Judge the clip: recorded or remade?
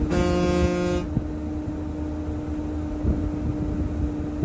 recorded